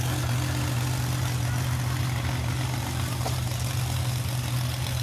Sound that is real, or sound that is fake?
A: real